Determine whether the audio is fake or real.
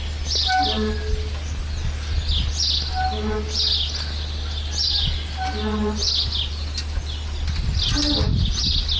real